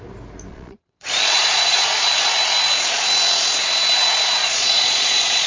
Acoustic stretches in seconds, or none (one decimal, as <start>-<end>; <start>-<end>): 0.0-0.5; 2.3-4.4